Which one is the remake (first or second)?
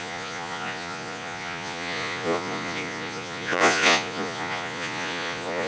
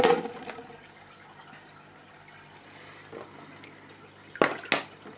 first